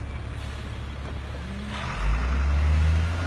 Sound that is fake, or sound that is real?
real